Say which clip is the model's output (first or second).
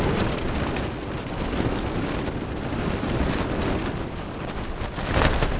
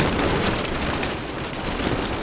second